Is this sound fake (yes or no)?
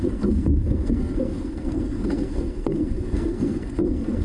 yes